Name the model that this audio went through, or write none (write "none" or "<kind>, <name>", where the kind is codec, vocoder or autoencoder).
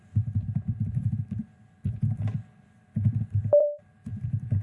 vocoder, BigVGAN v2